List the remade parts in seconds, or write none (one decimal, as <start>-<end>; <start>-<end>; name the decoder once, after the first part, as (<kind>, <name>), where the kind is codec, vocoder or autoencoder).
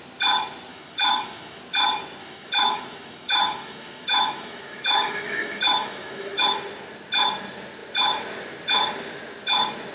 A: 0.7-1.6 (autoencoder, DAC-VAE); 2.2-6.4